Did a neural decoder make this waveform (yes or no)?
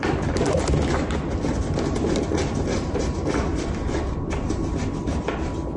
no